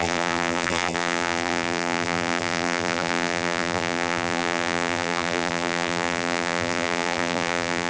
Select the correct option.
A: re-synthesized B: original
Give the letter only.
A